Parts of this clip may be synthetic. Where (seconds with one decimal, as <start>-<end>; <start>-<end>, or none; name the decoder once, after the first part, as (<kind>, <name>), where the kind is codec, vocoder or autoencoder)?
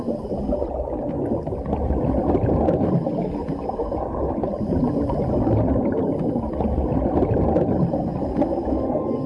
none